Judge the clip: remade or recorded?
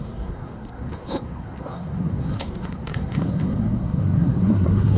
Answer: remade